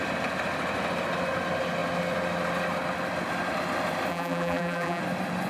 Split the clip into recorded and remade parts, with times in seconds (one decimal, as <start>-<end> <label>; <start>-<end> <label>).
0.0-4.1 recorded; 4.1-5.0 remade; 5.0-5.5 recorded